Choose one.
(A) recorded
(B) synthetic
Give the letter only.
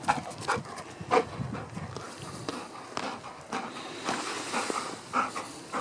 A